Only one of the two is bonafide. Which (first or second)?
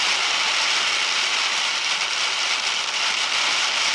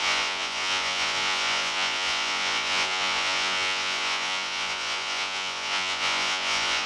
first